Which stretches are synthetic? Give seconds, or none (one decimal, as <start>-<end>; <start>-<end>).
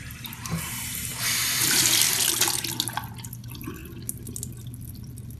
none